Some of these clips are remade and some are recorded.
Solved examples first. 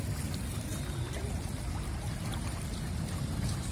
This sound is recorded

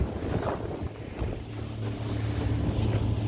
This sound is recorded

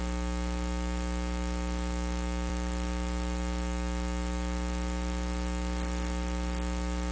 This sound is recorded